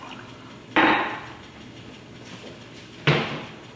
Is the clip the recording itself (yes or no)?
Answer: yes